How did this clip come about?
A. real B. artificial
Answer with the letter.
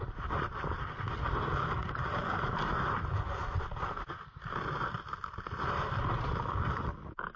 A